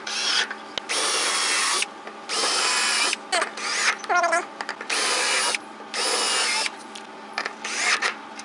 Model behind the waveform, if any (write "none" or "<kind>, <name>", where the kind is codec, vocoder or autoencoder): none